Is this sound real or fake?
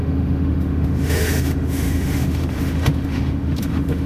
fake